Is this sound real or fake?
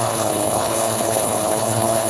fake